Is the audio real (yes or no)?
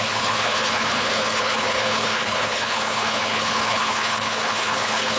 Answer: no